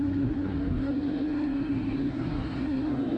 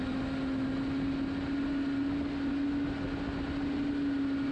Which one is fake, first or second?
first